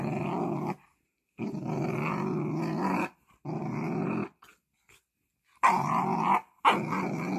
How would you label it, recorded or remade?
recorded